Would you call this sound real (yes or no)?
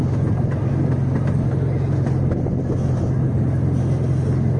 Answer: yes